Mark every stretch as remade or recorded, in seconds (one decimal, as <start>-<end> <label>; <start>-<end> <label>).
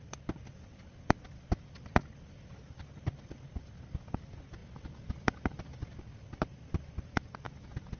0.0-8.0 recorded